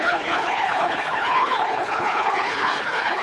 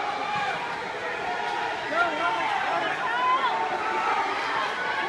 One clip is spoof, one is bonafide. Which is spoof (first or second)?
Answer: first